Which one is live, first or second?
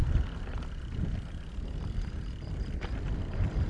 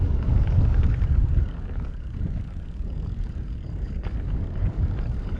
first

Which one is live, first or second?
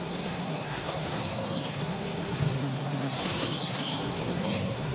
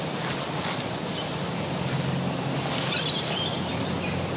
second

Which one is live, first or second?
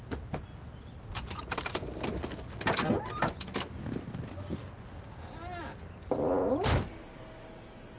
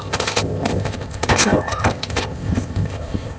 first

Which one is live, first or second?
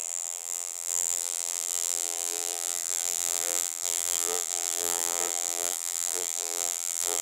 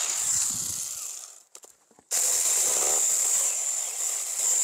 second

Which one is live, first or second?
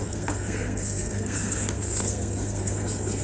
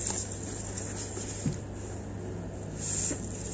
second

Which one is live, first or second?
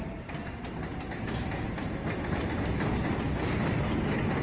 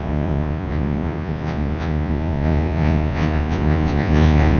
first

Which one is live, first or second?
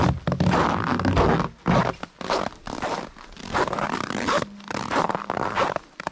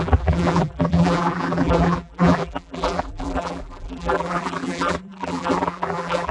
first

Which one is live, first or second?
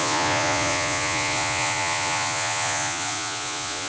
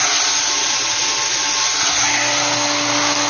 second